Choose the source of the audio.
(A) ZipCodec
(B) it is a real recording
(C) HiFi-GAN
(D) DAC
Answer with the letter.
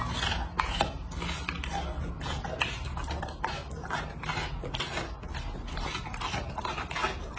B